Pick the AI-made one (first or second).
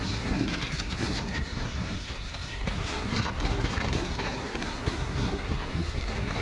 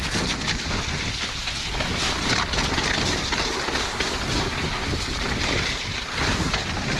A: first